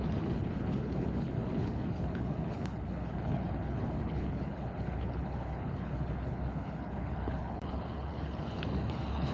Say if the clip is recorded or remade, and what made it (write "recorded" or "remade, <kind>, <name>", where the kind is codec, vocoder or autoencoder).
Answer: remade, codec, HILCodec